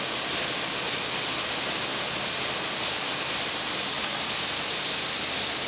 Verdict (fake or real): real